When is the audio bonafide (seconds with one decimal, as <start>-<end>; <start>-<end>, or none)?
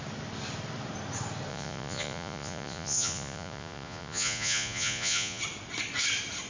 0.0-1.5; 5.4-6.5